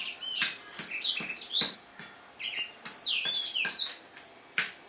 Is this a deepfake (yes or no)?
no